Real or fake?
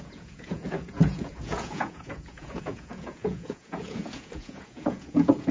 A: fake